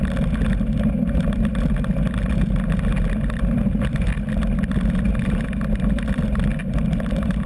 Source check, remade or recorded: recorded